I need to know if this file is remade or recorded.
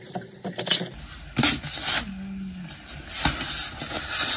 recorded